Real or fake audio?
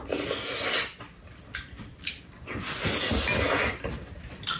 real